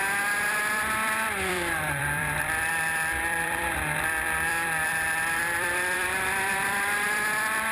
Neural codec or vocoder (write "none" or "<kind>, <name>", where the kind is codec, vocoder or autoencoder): vocoder, BigVGAN v2